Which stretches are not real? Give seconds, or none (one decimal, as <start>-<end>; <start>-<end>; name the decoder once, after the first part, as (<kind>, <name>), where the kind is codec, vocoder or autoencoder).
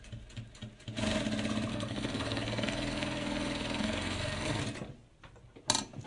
1.7-4.6 (codec, SNAC)